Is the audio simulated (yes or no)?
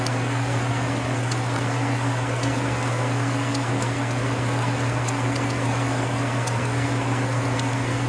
yes